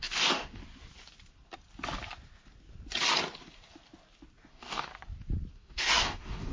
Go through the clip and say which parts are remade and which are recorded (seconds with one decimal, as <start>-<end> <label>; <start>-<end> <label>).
0.0-0.6 remade; 0.6-4.5 recorded; 4.5-4.9 remade; 4.9-5.5 recorded; 5.5-6.5 remade